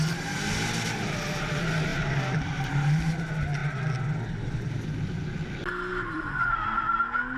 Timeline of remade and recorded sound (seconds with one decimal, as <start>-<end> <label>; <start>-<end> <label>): 0.0-1.9 recorded; 1.9-2.7 remade; 2.7-5.9 recorded; 5.9-6.8 remade; 6.8-7.4 recorded